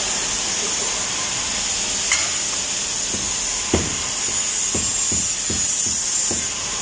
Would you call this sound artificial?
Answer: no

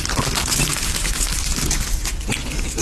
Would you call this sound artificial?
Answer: no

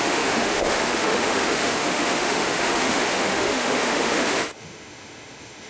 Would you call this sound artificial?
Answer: yes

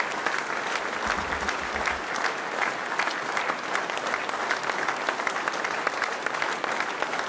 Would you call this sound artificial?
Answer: no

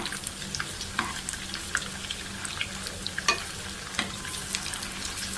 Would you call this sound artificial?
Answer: no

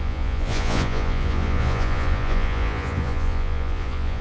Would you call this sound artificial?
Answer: yes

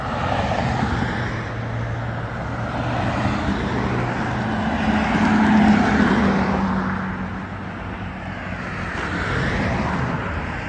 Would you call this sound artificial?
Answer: no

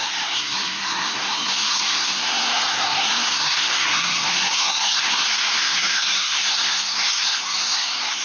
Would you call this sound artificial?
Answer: yes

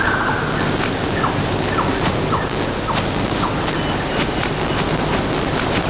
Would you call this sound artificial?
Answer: no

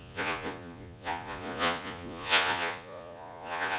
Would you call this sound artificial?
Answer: yes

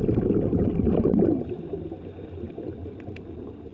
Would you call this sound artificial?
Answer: no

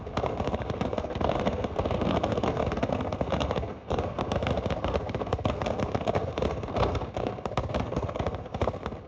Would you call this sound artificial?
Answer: yes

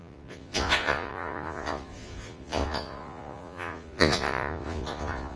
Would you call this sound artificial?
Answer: yes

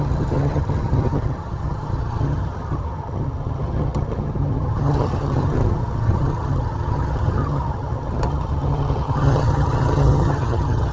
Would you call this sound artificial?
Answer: yes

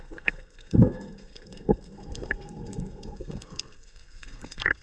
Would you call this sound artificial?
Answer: yes